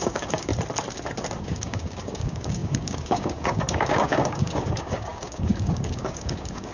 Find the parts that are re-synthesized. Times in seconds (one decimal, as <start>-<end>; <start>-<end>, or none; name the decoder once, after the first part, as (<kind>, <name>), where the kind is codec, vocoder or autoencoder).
0.0-0.5 (codec, DAC); 1.4-6.7